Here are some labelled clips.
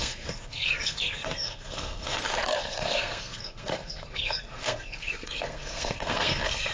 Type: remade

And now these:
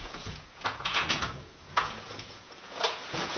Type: remade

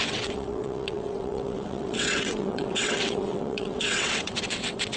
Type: remade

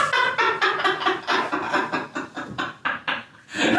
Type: recorded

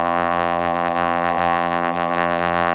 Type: remade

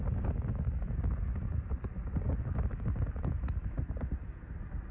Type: recorded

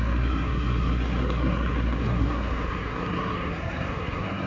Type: remade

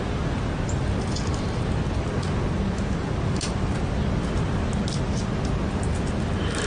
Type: recorded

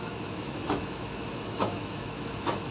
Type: remade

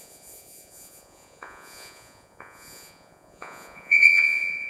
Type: remade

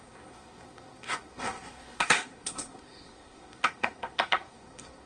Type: remade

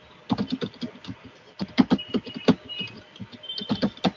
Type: recorded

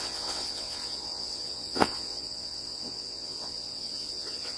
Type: remade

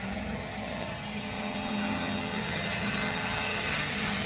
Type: remade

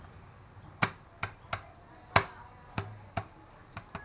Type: recorded